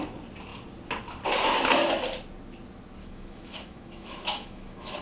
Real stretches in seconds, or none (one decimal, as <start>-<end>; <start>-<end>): 0.0-3.0